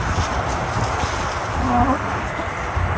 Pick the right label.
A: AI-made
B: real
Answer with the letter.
B